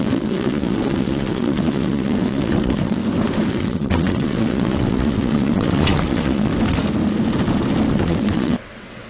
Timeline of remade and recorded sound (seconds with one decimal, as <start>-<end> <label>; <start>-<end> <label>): 0.0-3.0 remade; 3.0-3.5 recorded; 3.5-6.5 remade; 6.5-7.9 recorded; 7.9-9.1 remade